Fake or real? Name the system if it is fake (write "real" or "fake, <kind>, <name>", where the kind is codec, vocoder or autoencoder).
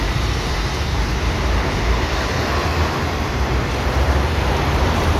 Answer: fake, vocoder, BigVGAN v2